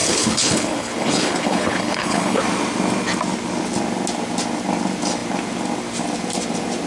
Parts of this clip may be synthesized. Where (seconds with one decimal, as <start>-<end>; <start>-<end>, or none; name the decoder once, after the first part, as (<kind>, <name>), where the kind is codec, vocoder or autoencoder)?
0.0-2.4 (codec, HILCodec)

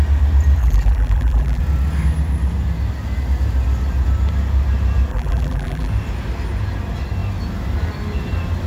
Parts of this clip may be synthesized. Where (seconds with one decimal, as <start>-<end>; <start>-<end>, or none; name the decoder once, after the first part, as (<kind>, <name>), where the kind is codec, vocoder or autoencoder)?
0.6-1.6 (vocoder, BigVGAN v2); 5.1-5.9